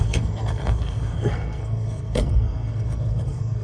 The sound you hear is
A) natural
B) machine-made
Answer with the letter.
B